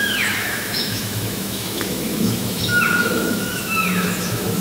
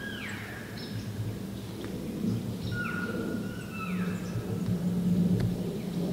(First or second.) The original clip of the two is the second